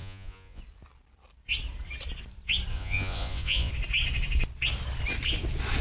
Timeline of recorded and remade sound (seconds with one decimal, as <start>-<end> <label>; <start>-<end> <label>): 0.0-0.6 remade; 0.6-2.7 recorded; 2.7-3.7 remade; 3.7-5.8 recorded